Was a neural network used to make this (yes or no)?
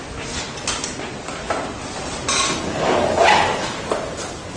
no